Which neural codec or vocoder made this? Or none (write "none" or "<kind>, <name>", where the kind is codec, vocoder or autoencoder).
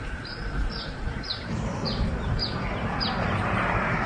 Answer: vocoder, BigVGAN v2